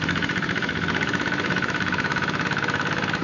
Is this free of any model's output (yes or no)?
no